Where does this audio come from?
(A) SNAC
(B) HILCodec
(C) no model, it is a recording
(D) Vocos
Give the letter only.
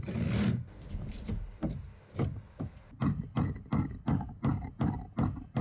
C